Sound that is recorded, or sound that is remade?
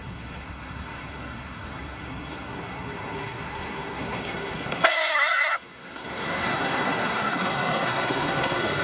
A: remade